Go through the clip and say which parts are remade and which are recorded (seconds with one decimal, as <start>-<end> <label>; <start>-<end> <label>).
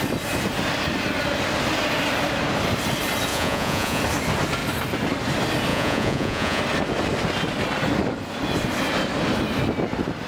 0.0-3.3 recorded; 3.3-4.0 remade; 4.0-5.7 recorded; 5.7-6.6 remade; 6.6-10.3 recorded